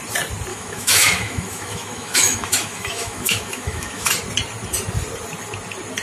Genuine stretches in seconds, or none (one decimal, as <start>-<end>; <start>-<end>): 0.0-0.5; 4.1-6.0